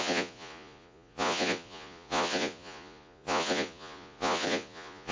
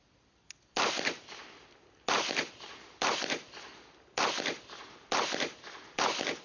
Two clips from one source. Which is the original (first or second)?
second